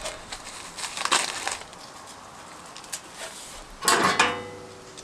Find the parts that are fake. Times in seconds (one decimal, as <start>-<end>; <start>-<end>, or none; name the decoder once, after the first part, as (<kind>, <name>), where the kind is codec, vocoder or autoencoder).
none